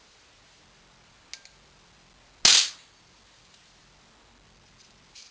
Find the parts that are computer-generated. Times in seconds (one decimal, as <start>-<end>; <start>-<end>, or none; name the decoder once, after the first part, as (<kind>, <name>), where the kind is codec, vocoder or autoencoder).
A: none